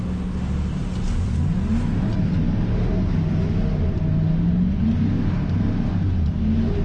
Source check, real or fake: real